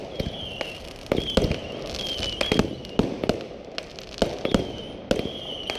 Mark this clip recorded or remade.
recorded